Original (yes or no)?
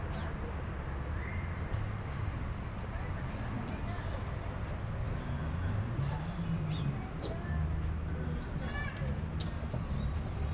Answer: yes